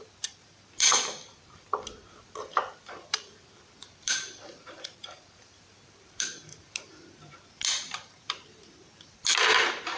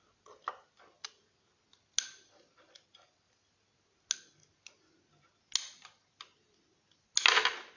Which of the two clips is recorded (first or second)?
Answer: second